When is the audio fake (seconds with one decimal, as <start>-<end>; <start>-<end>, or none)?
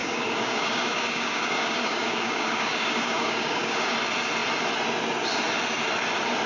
0.0-3.9